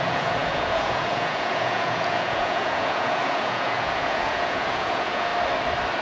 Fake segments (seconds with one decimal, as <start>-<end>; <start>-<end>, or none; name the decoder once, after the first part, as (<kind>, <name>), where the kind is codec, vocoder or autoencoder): 0.0-5.3 (vocoder, Vocos)